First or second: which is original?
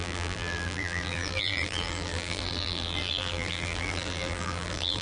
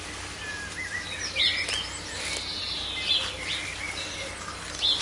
second